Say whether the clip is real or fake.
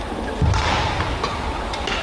real